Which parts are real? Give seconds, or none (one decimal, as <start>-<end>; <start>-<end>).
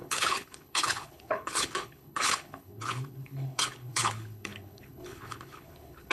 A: none